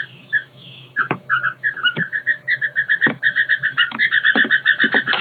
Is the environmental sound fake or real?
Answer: fake